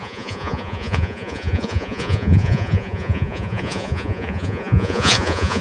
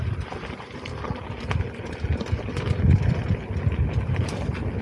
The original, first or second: second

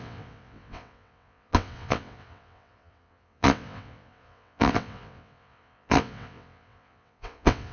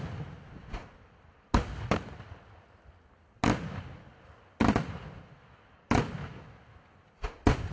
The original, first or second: second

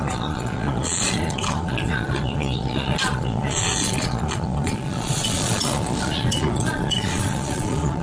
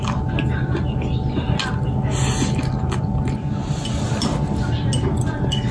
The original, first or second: second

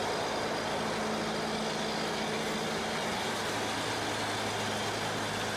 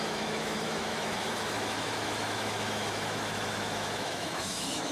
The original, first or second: first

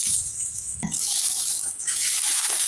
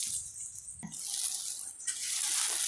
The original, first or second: second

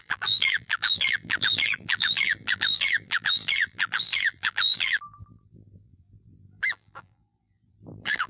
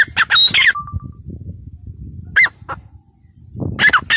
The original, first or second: second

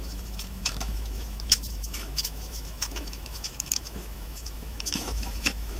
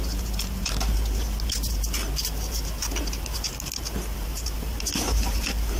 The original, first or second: second